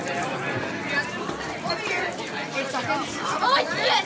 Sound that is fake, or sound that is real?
real